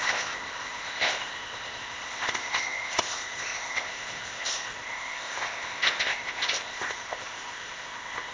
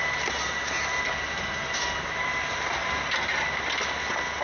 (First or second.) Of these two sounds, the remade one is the first